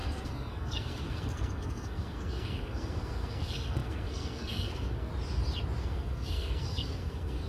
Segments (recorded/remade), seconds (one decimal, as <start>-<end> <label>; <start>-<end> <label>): 0.0-5.1 remade; 5.1-5.8 recorded; 5.8-7.5 remade